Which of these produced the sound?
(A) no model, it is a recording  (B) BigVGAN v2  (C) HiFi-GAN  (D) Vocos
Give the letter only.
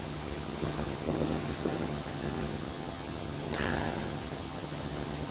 C